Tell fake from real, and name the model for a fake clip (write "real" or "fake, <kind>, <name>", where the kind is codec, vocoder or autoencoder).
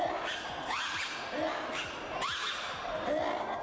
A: real